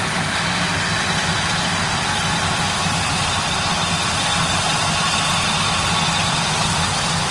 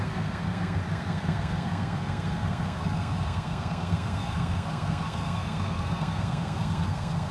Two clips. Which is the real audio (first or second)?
first